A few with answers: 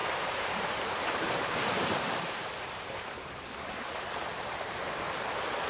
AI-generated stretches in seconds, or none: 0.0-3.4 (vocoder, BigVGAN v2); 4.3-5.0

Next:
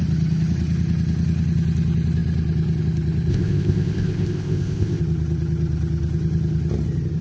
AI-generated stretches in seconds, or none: 3.3-5.0 (codec, ZipCodec)

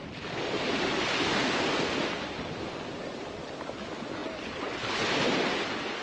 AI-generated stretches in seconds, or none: none

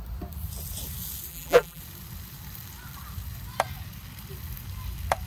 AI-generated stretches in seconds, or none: 1.3-1.8 (vocoder, BigVGAN v2)

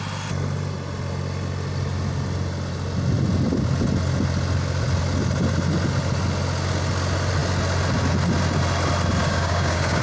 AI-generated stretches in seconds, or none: 9.2-10.0 (codec, DAC)